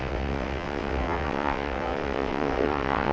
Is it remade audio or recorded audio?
remade